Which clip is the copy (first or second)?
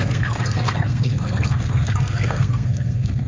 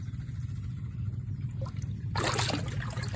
first